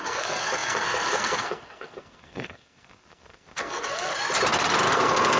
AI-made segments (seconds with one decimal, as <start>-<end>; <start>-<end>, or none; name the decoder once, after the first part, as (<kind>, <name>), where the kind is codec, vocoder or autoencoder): 0.0-4.1 (codec, SNAC); 4.9-5.4